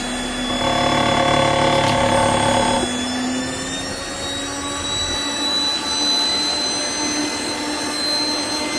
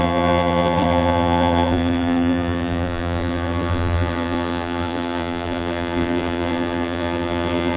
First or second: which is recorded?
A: first